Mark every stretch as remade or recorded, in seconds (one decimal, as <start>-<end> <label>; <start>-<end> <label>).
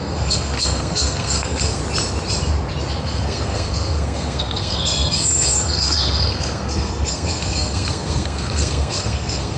0.0-1.8 remade; 1.8-3.0 recorded; 3.0-9.6 remade